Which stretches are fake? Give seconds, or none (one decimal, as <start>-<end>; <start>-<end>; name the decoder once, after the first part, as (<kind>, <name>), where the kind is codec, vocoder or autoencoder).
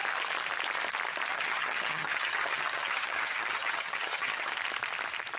1.3-4.5 (vocoder, HiFi-GAN)